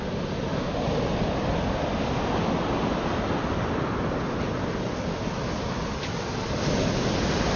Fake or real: real